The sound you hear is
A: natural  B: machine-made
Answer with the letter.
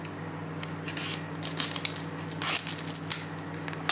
A